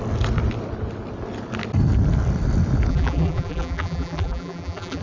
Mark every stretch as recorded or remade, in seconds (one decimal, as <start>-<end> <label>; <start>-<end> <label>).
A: 0.0-2.9 recorded; 2.9-5.0 remade